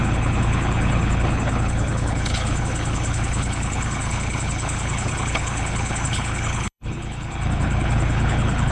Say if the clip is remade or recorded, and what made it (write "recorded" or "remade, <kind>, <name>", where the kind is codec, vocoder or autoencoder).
remade, codec, HILCodec